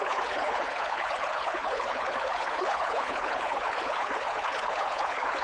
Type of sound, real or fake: fake